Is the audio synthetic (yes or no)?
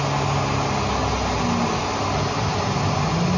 no